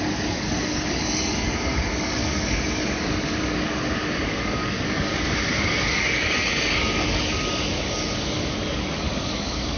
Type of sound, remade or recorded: remade